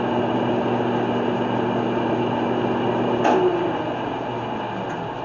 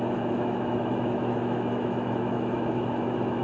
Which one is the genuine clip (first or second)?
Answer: first